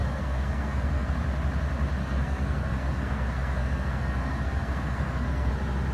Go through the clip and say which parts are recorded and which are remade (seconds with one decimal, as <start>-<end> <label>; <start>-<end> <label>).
0.0-1.1 remade; 1.1-2.0 recorded; 2.0-5.5 remade; 5.5-5.9 recorded